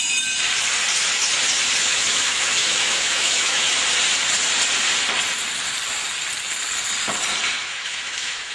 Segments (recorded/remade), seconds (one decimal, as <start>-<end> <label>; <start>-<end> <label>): 0.0-1.8 recorded; 1.8-3.7 remade; 3.7-7.6 recorded; 7.6-8.5 remade